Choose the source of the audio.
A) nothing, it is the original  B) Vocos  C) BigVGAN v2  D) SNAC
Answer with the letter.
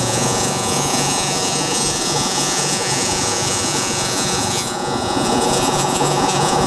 B